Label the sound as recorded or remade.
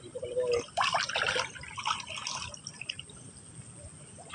recorded